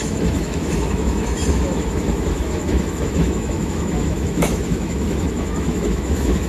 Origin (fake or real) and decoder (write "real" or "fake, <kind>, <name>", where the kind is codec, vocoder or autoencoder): fake, autoencoder, DAC-VAE